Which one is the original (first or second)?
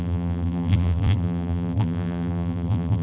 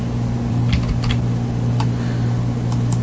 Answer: second